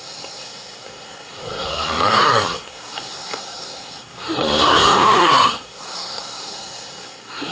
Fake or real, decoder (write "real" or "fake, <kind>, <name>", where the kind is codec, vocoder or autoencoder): fake, codec, SNAC